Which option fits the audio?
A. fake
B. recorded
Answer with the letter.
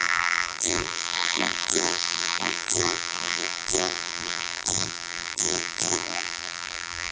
A